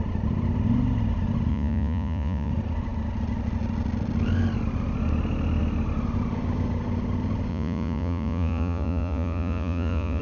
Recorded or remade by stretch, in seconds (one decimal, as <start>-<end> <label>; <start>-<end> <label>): 0.0-1.5 recorded; 1.5-2.5 remade; 2.5-7.5 recorded; 7.5-10.2 remade